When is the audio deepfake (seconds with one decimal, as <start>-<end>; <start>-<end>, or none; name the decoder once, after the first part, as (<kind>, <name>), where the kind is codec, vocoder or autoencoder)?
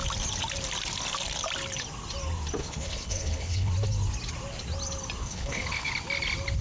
2.6-3.7 (codec, HILCodec); 5.2-5.9